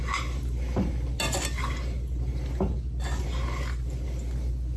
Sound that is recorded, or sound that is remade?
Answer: recorded